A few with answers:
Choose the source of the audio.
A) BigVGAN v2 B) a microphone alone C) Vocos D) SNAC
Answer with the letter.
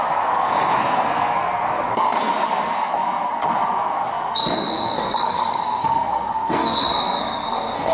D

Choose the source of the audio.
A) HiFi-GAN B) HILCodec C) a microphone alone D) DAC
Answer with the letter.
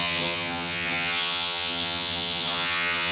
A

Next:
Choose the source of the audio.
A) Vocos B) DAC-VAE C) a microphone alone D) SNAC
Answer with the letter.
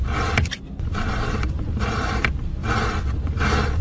C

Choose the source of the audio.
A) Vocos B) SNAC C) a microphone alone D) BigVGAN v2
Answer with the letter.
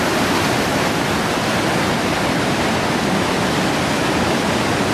C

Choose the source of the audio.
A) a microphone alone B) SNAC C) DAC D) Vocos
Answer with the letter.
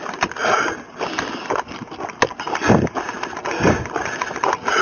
A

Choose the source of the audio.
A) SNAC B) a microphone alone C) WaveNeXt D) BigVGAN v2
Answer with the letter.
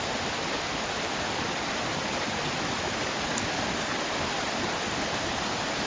D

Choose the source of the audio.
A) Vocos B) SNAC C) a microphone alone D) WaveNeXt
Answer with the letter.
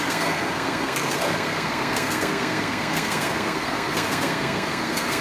B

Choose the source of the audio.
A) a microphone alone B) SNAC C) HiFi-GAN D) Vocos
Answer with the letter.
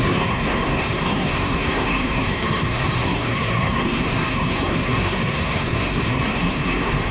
B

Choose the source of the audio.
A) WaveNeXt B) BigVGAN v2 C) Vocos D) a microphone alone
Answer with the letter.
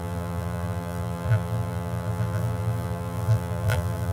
B